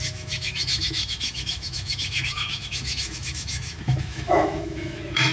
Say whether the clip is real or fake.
fake